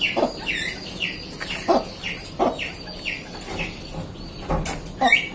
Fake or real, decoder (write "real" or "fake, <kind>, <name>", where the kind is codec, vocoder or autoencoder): real